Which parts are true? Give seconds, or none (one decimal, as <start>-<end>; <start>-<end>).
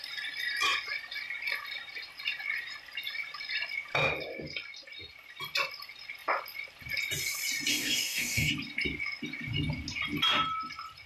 0.0-7.7; 8.5-11.1